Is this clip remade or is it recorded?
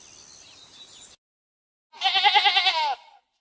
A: recorded